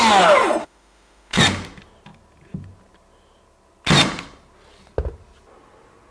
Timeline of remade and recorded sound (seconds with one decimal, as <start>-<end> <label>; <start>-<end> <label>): 0.0-0.6 recorded; 0.6-1.4 remade; 1.4-6.1 recorded